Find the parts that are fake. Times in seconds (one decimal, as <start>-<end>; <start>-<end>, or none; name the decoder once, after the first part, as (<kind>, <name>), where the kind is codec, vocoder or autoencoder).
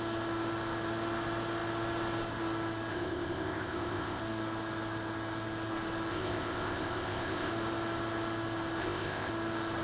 2.9-4.2 (codec, ZipCodec); 6.1-7.5; 8.8-9.3